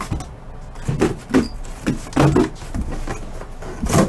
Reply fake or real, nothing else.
real